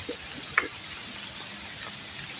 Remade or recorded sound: recorded